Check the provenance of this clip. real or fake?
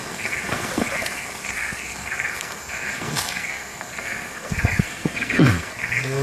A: fake